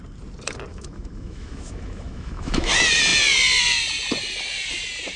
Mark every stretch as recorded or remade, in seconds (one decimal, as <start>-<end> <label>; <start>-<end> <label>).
0.0-0.7 recorded; 0.7-2.7 remade; 2.7-5.2 recorded

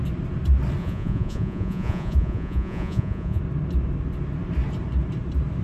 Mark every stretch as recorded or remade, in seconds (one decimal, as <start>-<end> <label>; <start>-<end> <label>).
0.0-0.8 recorded; 0.8-3.4 remade; 3.4-5.6 recorded

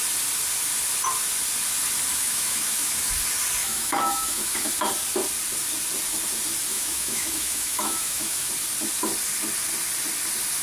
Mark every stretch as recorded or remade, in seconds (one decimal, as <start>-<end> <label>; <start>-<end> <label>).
0.0-2.1 recorded; 2.1-3.1 remade; 3.1-3.6 recorded; 3.6-4.7 remade; 4.7-6.7 recorded; 6.7-8.5 remade; 8.5-10.6 recorded

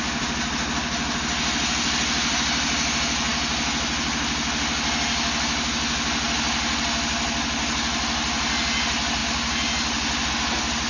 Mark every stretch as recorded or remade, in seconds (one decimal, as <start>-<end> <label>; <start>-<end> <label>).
0.0-10.9 recorded

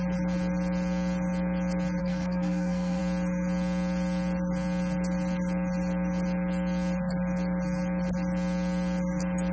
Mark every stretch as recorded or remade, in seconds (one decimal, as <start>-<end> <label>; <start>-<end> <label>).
0.0-2.0 recorded; 2.0-3.0 remade; 3.0-9.5 recorded